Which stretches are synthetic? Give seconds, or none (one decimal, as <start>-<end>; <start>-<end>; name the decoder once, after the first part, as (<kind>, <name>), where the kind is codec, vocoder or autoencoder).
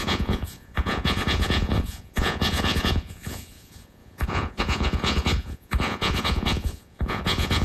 0.0-7.6 (vocoder, Vocos)